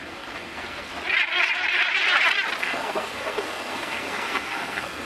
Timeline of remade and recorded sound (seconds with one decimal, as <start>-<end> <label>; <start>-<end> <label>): 0.0-0.9 remade; 0.9-2.6 recorded; 2.6-5.0 remade